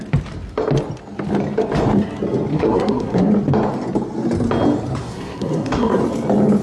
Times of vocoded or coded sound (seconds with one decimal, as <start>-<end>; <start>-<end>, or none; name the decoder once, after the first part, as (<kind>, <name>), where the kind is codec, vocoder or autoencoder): 2.5-3.3 (codec, SNAC); 5.0-6.0